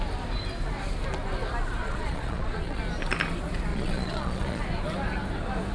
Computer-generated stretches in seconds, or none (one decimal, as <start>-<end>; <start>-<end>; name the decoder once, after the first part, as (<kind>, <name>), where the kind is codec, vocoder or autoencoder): 1.8-2.8 (vocoder, Vocos); 3.7-4.6